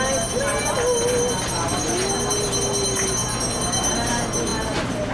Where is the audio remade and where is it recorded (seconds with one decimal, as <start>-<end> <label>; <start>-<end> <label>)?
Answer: 0.0-5.1 recorded